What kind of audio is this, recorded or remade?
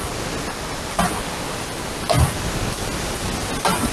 recorded